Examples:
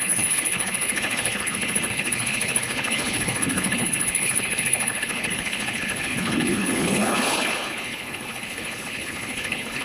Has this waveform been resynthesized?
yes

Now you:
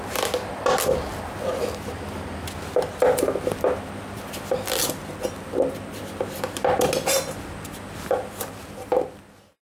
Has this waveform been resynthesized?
no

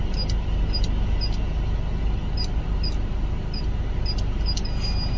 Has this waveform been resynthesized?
no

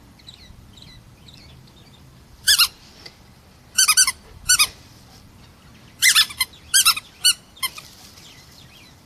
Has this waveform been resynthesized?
yes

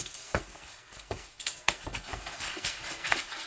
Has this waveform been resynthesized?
yes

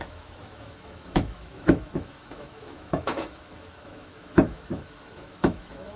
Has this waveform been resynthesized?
yes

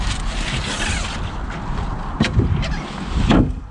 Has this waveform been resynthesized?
no